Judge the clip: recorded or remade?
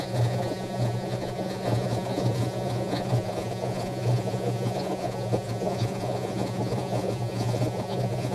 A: remade